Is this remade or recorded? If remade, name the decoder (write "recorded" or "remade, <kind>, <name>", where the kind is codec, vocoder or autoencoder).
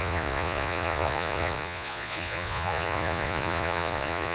remade, vocoder, Vocos